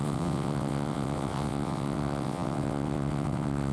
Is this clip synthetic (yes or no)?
yes